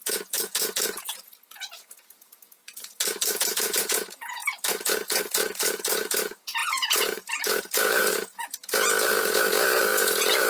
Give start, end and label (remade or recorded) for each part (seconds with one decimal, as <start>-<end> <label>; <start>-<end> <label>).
0.0-10.5 remade